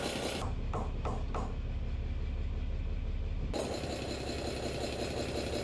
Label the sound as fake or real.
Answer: real